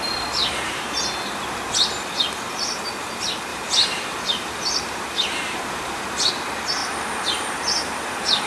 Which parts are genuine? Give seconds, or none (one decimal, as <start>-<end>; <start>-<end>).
0.0-0.4; 1.0-3.5; 6.3-8.5